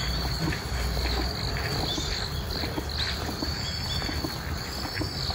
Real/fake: real